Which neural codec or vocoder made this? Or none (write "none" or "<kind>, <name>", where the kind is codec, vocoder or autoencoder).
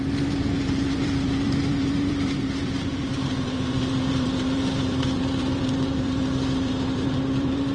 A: vocoder, BigVGAN v2